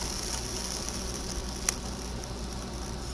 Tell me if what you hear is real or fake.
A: real